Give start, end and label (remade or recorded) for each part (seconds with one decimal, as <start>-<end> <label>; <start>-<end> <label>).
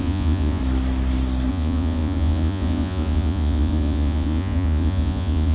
0.0-0.6 remade; 0.6-1.5 recorded; 1.5-5.5 remade